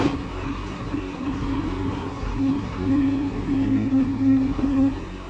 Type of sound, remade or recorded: remade